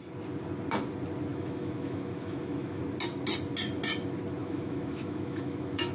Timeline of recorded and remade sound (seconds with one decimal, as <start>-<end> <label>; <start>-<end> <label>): 0.0-1.3 recorded; 1.3-2.8 remade; 2.8-4.4 recorded; 4.4-5.9 remade